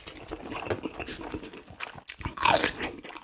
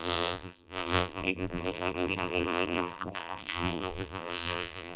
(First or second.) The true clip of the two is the first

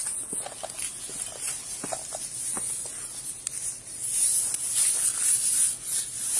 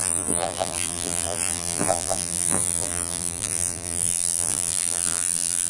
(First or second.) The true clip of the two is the first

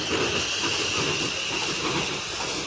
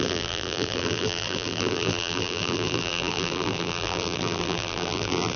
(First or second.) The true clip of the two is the first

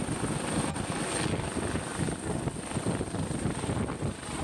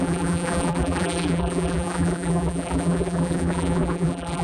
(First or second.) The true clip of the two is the first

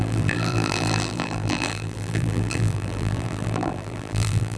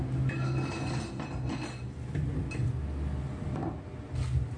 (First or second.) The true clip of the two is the second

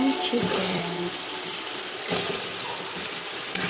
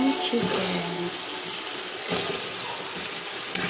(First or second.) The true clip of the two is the second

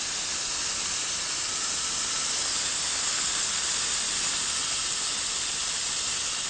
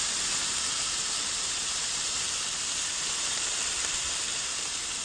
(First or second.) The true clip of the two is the first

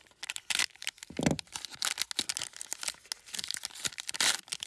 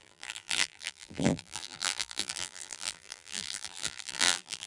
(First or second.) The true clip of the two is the first